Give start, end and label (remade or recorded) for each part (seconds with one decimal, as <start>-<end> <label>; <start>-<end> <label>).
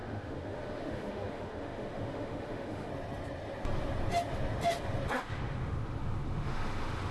0.0-2.9 remade; 2.9-5.1 recorded; 5.1-7.1 remade